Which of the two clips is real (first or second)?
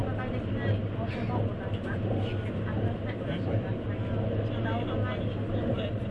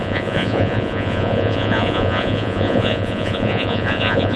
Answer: first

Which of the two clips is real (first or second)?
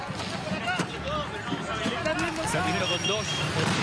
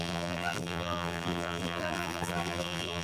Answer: first